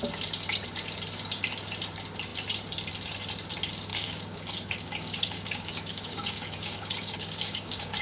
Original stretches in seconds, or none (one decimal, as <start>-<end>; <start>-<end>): 0.0-3.9